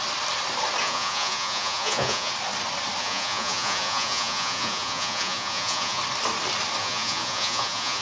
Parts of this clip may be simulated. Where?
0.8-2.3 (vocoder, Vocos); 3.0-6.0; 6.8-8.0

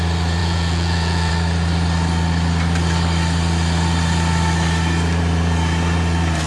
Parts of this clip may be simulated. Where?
0.4-1.3 (vocoder, Vocos)

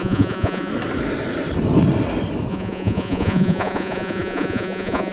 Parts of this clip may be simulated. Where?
0.0-0.7 (vocoder, Vocos); 2.5-5.1

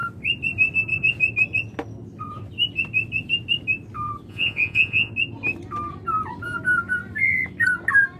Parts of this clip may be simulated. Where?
4.3-5.1 (vocoder, Vocos)

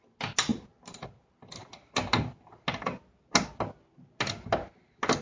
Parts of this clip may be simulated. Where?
none

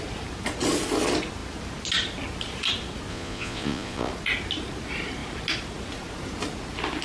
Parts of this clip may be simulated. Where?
3.1-4.1 (vocoder, Vocos)